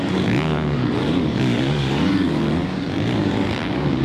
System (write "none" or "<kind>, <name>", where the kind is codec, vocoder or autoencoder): codec, DAC